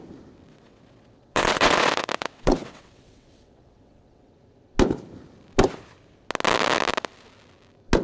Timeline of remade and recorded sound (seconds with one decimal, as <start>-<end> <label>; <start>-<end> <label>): 0.0-0.5 recorded; 0.5-4.3 remade; 4.3-8.0 recorded